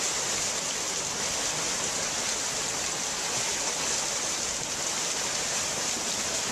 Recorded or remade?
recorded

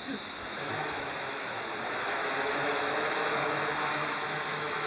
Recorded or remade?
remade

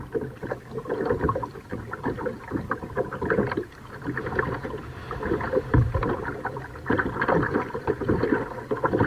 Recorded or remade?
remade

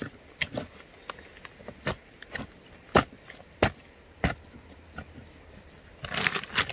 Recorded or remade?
recorded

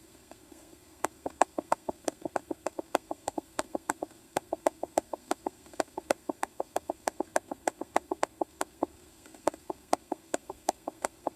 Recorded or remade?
remade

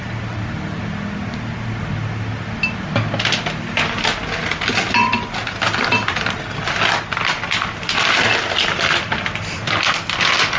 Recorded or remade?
recorded